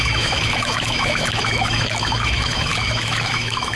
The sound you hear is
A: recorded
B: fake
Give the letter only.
B